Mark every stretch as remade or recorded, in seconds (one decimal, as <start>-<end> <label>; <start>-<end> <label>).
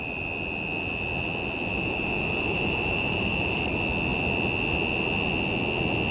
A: 0.0-1.7 recorded; 1.7-3.6 remade; 3.6-6.1 recorded